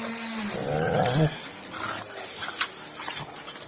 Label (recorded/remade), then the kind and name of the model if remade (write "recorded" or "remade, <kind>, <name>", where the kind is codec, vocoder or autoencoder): recorded